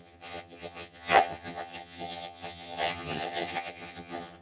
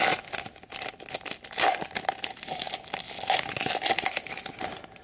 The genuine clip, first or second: second